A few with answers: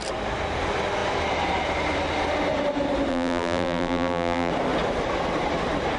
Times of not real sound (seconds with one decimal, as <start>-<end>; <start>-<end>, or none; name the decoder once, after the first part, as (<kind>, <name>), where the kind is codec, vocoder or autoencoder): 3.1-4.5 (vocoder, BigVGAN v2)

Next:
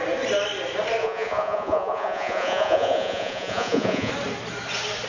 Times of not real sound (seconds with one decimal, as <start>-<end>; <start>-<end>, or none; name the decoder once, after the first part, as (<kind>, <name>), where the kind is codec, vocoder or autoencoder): 1.0-4.1 (vocoder, Vocos)

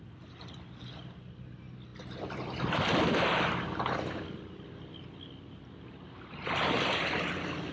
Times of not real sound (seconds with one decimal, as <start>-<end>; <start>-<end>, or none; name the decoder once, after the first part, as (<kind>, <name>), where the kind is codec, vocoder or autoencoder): none

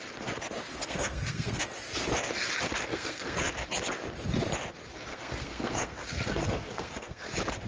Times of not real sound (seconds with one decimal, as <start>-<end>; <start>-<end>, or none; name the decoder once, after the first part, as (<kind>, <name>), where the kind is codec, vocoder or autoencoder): 0.7-1.6 (codec, SNAC); 2.9-3.4; 5.1-7.3

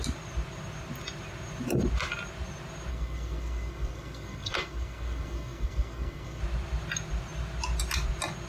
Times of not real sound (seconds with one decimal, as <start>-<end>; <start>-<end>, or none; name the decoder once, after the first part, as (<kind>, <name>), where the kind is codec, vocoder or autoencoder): 2.9-6.4 (codec, SNAC)

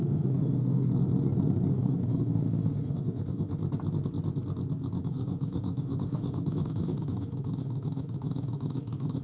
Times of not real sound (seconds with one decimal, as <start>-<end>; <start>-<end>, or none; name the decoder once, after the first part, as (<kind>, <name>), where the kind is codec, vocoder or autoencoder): 0.0-0.9 (autoencoder, DAC-VAE); 1.7-3.6; 5.0-9.2